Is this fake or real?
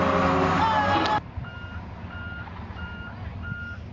real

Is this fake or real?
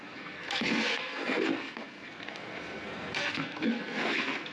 fake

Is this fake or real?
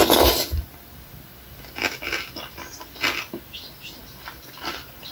real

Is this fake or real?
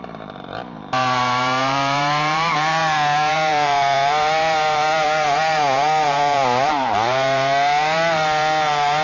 fake